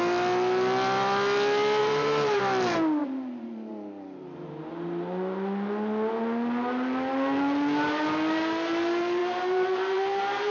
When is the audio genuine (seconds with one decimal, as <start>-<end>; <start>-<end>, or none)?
0.0-1.8; 2.4-3.0; 4.5-9.2